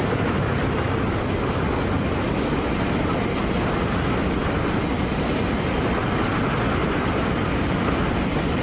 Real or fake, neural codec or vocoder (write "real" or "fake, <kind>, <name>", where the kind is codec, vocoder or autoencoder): real